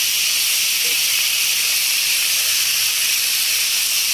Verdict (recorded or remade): recorded